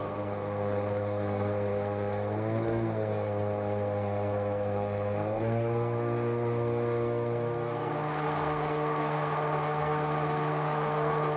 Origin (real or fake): fake